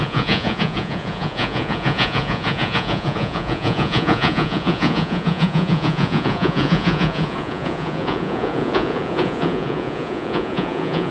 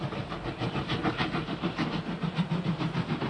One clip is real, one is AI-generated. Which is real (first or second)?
second